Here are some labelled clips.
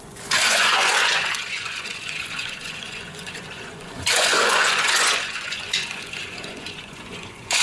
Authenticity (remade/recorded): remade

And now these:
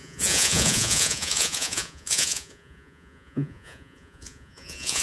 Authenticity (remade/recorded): remade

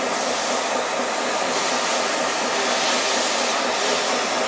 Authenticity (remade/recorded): recorded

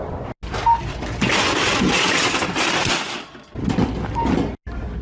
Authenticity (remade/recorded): recorded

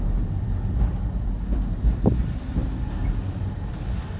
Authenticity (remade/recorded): recorded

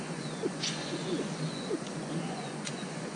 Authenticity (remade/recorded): remade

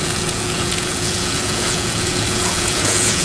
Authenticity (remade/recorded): remade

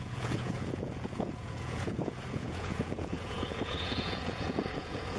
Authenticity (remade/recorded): remade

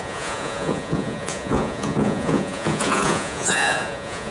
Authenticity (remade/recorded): remade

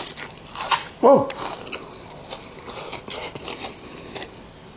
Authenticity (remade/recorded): recorded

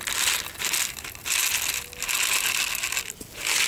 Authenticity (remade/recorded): recorded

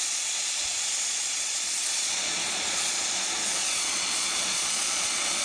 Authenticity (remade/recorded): remade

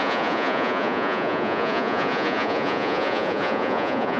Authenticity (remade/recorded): remade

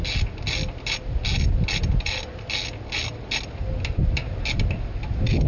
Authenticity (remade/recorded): recorded